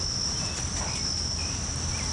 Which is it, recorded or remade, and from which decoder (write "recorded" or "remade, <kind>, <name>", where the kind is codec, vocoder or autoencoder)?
recorded